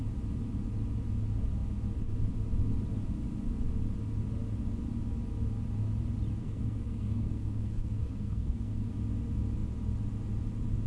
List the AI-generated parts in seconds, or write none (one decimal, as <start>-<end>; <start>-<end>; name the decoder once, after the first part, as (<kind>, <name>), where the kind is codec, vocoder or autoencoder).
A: 6.4-8.9 (codec, SNAC)